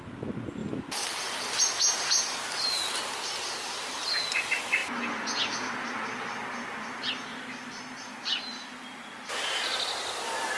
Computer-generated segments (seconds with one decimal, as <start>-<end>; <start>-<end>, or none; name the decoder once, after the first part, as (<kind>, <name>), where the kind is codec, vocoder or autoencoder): 0.6-1.6 (vocoder, BigVGAN v2); 4.8-5.9